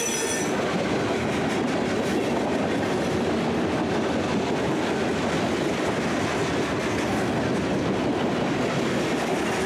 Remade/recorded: recorded